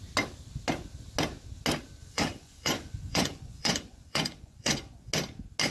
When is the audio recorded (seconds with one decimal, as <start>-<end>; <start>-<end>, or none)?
0.0-2.0; 5.1-5.7